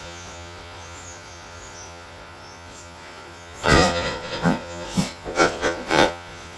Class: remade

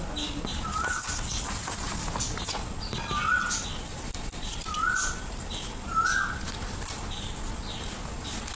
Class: recorded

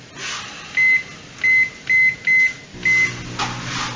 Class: recorded